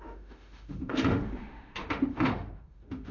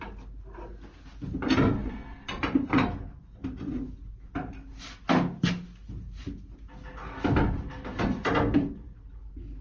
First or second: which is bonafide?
second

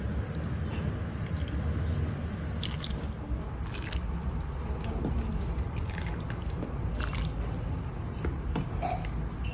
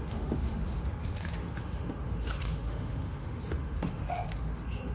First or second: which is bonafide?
first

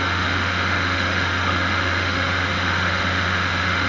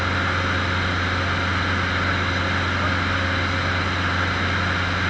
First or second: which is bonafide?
second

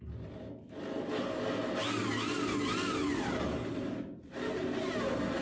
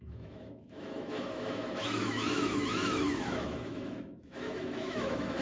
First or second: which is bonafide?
first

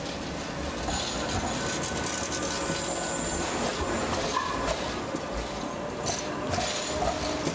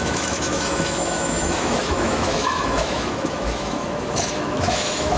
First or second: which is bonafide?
first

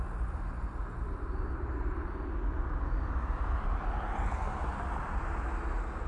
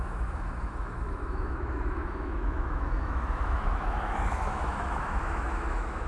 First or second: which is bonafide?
first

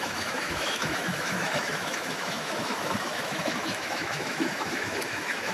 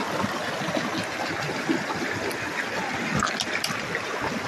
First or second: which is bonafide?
second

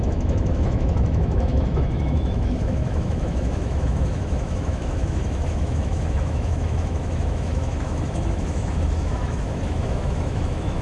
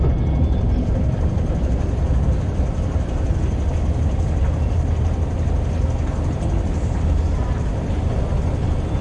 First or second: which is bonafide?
second